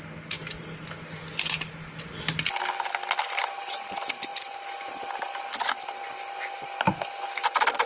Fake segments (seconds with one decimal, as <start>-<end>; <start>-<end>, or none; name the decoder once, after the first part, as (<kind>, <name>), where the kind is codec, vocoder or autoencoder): 4.3-6.5 (vocoder, BigVGAN v2)